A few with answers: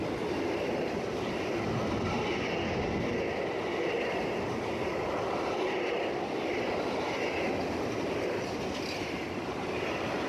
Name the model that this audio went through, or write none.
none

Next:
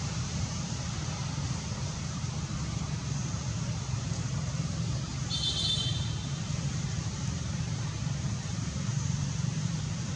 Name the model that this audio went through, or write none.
vocoder, BigVGAN v2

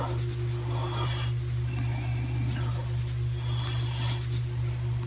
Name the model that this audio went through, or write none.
none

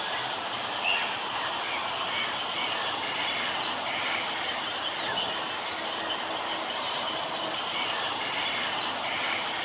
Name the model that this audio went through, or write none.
none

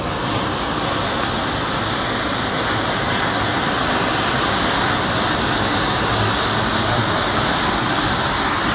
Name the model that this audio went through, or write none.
none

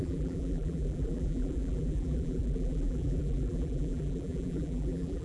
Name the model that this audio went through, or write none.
vocoder, BigVGAN v2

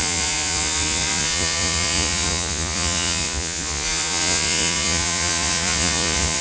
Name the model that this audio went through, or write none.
vocoder, Vocos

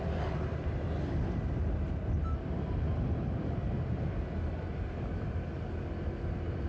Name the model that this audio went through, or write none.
none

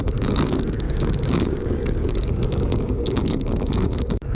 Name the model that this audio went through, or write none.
codec, DAC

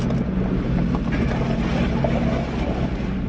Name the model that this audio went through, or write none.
none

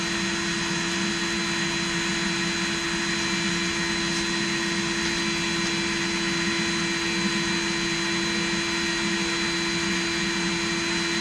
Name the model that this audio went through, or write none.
none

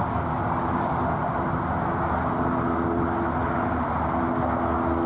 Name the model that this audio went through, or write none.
none